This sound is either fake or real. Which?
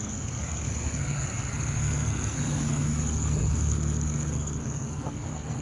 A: fake